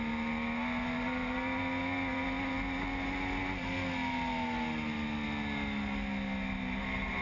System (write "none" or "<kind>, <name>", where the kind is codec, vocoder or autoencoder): none